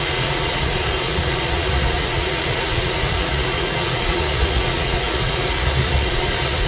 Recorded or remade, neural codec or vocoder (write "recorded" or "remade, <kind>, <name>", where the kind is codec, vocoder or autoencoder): remade, vocoder, Vocos